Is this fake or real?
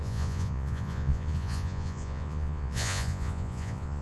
fake